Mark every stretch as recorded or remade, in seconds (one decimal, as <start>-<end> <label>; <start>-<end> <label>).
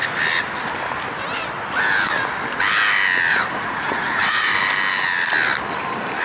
0.0-3.3 recorded; 3.3-4.5 remade; 4.5-6.2 recorded